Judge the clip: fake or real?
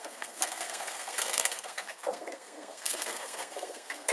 fake